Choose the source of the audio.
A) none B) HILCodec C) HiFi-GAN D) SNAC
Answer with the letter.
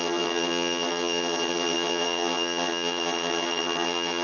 C